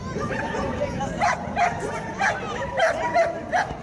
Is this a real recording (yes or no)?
yes